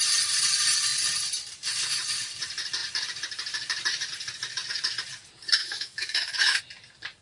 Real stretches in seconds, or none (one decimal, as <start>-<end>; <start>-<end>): 0.0-5.6; 6.6-7.2